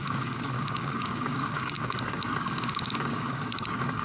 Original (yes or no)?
no